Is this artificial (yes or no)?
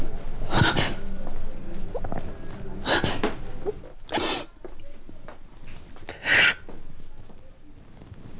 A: no